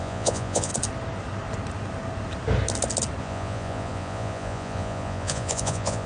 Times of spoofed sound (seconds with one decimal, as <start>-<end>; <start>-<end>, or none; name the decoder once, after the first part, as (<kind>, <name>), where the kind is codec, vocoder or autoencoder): 0.0-0.7 (vocoder, Vocos); 3.2-6.1